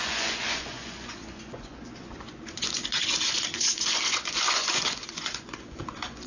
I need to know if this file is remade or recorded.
remade